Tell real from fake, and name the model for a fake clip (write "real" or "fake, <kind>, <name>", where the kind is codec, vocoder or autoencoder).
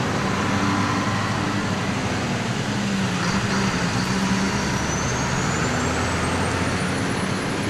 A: real